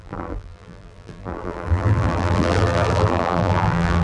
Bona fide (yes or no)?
no